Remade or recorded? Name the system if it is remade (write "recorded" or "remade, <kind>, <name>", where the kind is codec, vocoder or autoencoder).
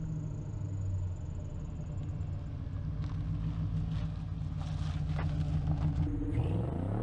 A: recorded